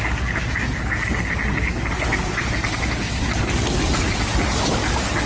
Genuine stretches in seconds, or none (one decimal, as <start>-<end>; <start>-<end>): 0.0-1.7; 3.4-5.3